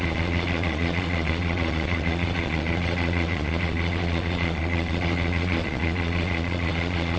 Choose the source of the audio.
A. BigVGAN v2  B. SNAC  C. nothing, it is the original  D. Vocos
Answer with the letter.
D